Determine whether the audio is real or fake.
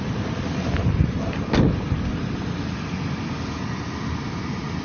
real